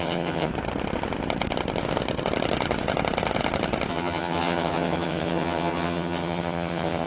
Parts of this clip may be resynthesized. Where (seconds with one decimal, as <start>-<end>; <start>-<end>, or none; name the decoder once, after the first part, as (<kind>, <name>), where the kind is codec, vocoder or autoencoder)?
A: 0.0-0.5 (vocoder, HiFi-GAN); 3.9-7.1